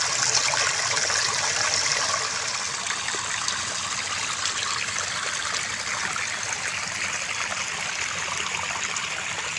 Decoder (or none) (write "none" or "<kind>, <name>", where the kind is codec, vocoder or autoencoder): none